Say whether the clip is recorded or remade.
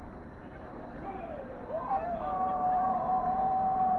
remade